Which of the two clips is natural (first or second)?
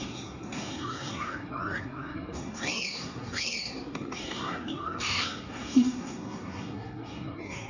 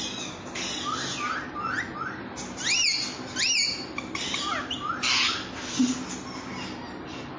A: second